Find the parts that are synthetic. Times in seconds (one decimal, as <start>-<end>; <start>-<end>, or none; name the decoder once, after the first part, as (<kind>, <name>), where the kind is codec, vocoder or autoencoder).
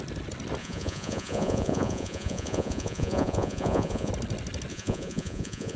0.6-4.1 (vocoder, Vocos); 4.7-5.8